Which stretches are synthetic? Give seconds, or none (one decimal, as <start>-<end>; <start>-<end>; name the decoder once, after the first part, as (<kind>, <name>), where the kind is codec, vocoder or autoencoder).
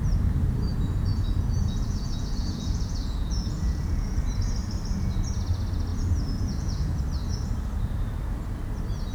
0.7-4.2 (vocoder, Vocos); 5.9-7.0